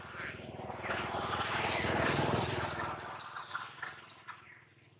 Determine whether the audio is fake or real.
real